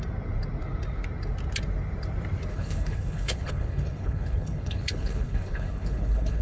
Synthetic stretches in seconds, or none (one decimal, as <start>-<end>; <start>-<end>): 2.5-6.4